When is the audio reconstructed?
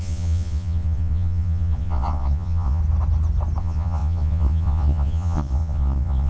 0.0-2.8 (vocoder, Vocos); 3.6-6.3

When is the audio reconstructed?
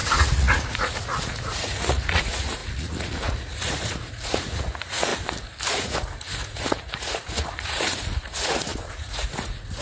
0.0-5.1 (vocoder, Vocos); 5.7-9.8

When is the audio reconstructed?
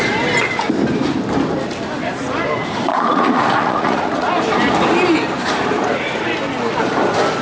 2.9-4.3 (vocoder, Vocos)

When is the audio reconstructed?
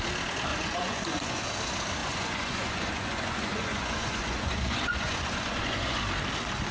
0.5-1.4 (vocoder, Vocos); 2.0-6.0